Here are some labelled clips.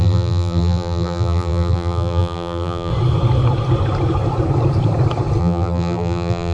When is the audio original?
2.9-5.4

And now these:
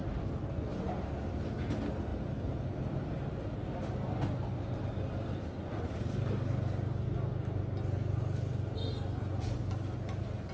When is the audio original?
0.0-10.5

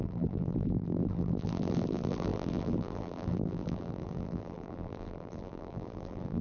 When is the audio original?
none

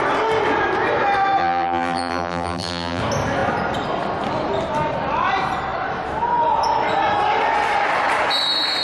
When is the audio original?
0.0-1.4; 3.0-8.8

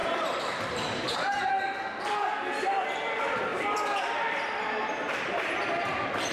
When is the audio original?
1.5-6.3

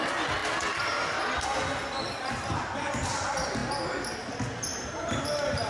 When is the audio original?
0.0-4.7